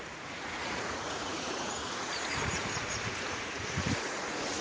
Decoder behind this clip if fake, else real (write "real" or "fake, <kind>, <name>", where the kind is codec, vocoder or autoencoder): fake, vocoder, Vocos